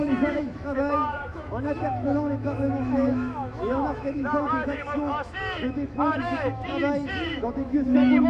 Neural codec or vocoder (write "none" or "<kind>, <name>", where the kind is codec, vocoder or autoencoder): autoencoder, DAC-VAE